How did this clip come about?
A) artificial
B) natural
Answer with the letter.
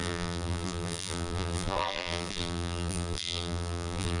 A